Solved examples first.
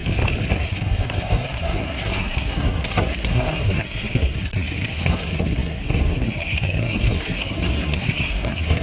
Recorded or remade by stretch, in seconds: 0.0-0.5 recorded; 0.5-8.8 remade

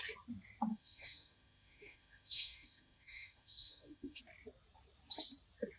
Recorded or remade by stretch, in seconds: 0.0-0.7 recorded; 0.7-4.2 remade; 4.2-5.8 recorded

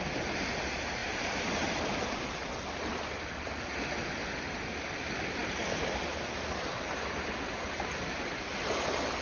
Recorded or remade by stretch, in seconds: 0.0-1.0 recorded; 1.0-2.2 remade; 2.2-9.2 recorded

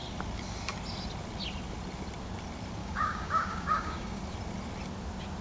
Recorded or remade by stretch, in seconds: 0.0-2.8 recorded; 2.8-4.2 remade; 4.2-5.4 recorded

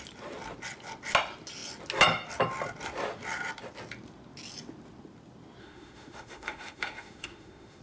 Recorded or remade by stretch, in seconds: 0.0-5.6 recorded; 5.6-7.8 remade

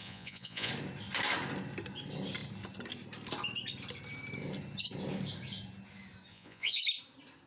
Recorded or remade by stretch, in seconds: 0.0-0.7 remade; 0.7-6.3 recorded; 6.3-6.8 remade; 6.8-7.5 recorded

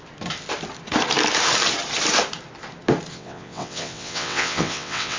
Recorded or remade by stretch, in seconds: 0.0-3.1 recorded; 3.1-5.2 remade

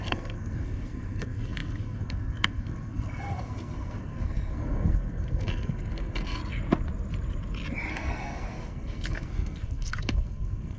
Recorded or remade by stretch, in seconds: 0.0-6.4 remade; 6.4-7.9 recorded; 7.9-10.8 remade